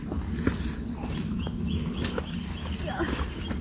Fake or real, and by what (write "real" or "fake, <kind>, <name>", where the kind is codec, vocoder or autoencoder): real